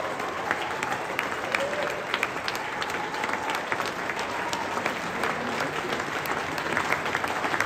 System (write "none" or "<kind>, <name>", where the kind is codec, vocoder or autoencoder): none